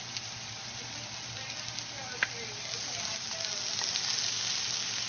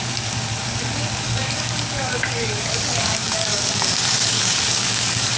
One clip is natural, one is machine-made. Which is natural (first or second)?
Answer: first